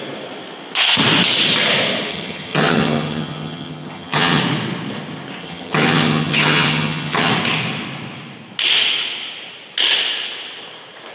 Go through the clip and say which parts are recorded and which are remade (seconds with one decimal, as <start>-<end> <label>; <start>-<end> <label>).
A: 0.0-2.1 recorded; 2.1-4.4 remade; 4.4-5.4 recorded; 5.4-7.3 remade; 7.3-11.1 recorded